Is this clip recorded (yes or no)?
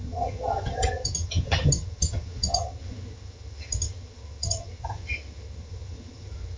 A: no